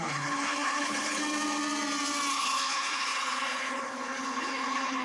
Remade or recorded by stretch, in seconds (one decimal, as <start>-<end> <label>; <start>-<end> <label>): 0.0-1.2 remade; 1.2-2.3 recorded; 2.3-5.0 remade